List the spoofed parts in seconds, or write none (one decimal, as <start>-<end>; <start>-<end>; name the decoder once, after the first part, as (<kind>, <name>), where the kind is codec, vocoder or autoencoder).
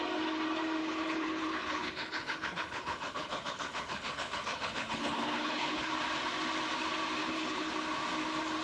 0.8-5.9 (codec, HILCodec); 7.2-7.7